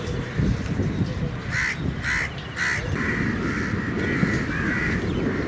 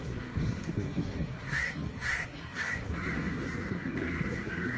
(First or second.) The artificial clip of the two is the second